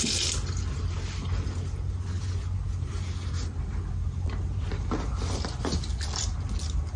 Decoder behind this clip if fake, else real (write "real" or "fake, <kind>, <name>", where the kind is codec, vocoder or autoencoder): real